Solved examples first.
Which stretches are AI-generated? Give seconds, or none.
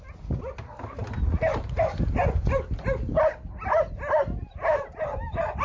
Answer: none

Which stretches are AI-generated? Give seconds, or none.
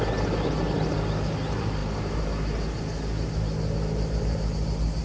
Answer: none